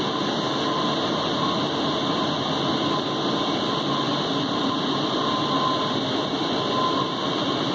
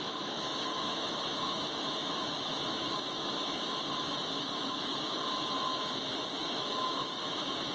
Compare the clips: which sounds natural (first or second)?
first